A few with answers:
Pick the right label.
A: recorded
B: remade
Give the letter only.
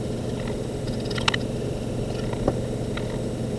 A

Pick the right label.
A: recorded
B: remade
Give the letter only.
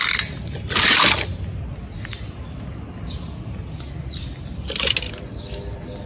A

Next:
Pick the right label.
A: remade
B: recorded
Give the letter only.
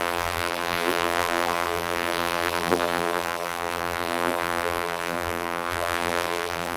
A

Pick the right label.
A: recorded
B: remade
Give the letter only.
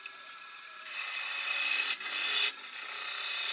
A